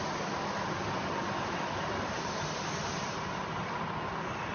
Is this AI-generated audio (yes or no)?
no